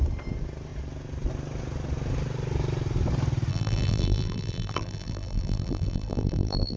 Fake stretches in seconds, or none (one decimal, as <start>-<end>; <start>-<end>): 3.5-6.8